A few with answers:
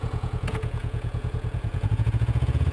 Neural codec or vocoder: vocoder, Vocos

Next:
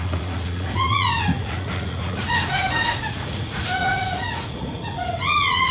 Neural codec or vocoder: vocoder, Vocos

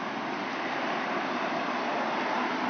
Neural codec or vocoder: none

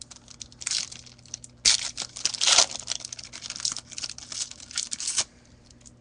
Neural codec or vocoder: none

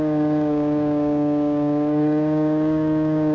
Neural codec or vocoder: codec, DAC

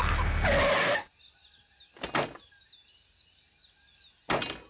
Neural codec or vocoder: none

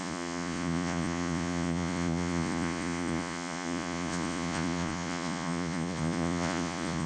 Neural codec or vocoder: vocoder, Vocos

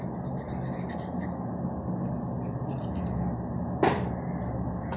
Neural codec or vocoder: none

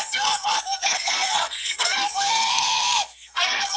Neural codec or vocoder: codec, SNAC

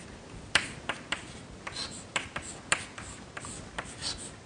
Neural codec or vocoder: none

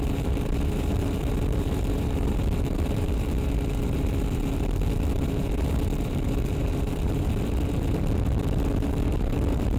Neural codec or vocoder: vocoder, BigVGAN v2